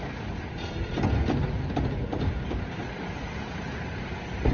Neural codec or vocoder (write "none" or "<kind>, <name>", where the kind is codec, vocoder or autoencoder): none